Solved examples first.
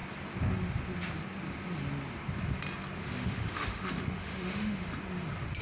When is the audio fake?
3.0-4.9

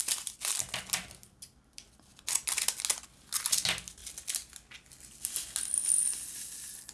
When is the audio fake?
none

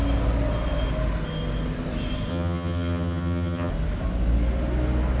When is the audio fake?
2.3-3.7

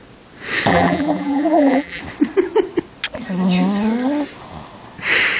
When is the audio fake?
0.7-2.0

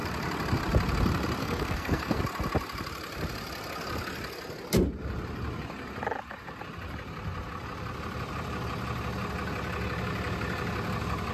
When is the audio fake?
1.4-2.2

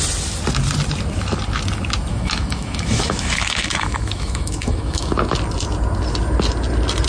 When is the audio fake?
2.1-5.1

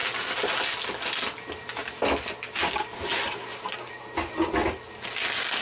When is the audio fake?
none